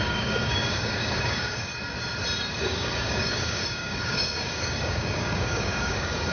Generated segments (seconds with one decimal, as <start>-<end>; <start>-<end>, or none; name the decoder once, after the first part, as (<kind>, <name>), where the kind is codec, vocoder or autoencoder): 0.0-1.7 (codec, DAC); 2.6-6.3